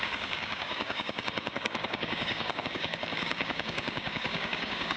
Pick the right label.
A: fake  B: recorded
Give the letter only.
A